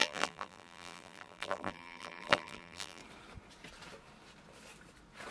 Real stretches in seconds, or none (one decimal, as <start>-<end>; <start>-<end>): 3.0-5.3